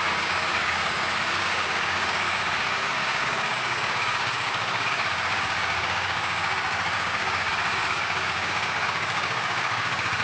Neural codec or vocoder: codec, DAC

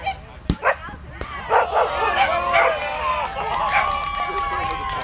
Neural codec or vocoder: none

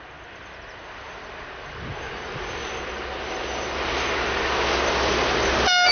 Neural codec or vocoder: none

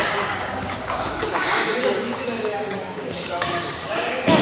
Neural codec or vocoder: codec, DAC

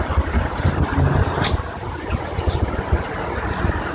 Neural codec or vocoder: none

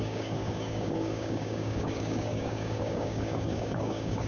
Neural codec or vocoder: codec, DAC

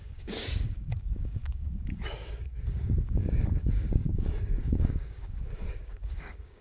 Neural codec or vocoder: codec, DAC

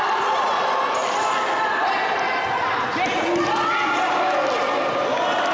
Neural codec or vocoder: none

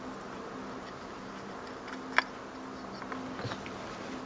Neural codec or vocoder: none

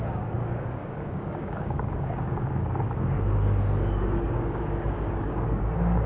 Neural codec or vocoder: codec, DAC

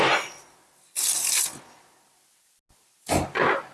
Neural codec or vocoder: none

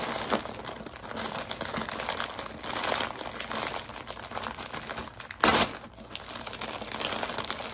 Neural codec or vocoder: none